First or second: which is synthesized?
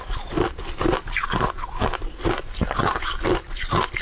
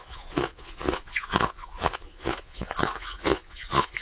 second